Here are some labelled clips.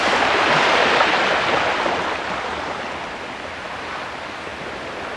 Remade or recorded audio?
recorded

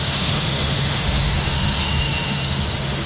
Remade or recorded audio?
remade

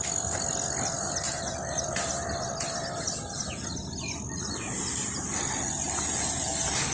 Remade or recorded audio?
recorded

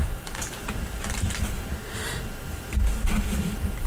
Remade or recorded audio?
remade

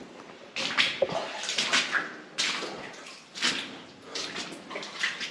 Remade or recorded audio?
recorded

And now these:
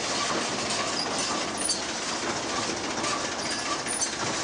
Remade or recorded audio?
recorded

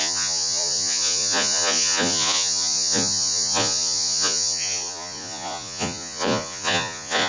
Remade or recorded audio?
remade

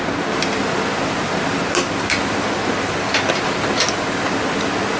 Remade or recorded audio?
recorded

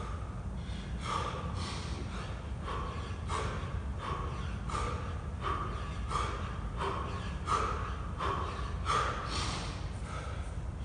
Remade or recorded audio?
recorded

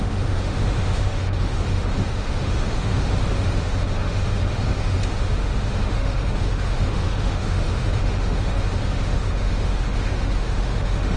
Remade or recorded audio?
remade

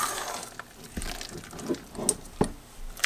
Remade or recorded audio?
recorded